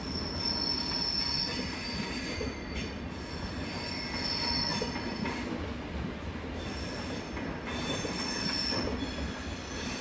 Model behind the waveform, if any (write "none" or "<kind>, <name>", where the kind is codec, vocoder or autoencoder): none